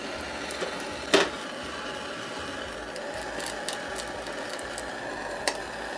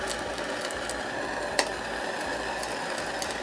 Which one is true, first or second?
first